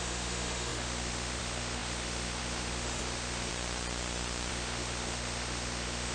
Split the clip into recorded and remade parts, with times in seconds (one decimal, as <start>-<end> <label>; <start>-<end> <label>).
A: 0.0-3.5 remade; 3.5-4.5 recorded; 4.5-6.1 remade